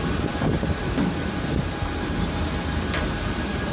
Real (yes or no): yes